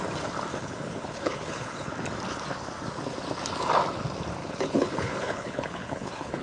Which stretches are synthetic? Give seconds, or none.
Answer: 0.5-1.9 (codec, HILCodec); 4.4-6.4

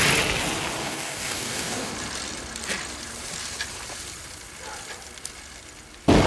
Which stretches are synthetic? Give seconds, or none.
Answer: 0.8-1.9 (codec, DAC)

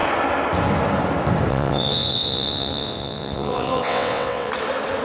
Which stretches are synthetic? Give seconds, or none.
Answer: 1.5-4.5 (vocoder, WaveNeXt)